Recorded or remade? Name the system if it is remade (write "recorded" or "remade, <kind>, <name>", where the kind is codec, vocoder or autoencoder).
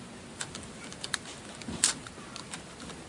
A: recorded